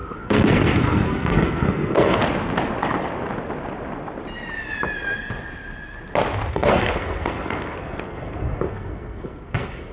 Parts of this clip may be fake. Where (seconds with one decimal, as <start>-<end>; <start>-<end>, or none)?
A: 0.0-2.2; 6.5-9.9